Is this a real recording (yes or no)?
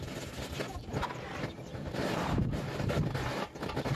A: yes